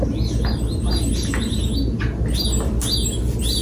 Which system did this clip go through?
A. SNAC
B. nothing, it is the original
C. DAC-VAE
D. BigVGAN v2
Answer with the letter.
B